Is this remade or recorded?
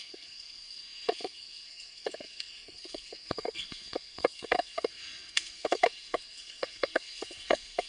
remade